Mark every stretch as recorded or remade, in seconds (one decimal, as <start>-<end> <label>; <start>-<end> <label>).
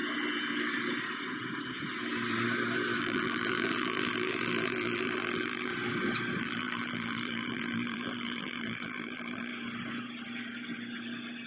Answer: 0.0-3.0 recorded; 3.0-5.7 remade; 5.7-6.4 recorded; 6.4-9.5 remade; 9.5-11.5 recorded